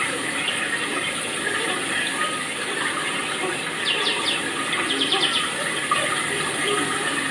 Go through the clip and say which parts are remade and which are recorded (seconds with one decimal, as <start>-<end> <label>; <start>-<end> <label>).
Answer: 0.0-7.3 recorded

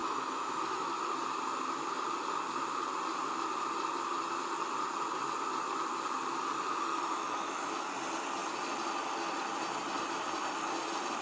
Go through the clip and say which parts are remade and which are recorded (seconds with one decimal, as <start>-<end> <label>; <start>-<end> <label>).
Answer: 0.0-0.9 remade; 0.9-6.9 recorded; 6.9-7.9 remade; 7.9-11.2 recorded